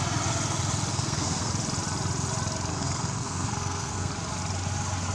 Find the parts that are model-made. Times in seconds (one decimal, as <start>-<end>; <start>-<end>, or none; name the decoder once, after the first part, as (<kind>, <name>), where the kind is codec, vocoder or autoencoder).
0.9-1.5 (codec, SNAC); 2.7-4.1